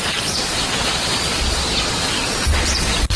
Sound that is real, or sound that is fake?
fake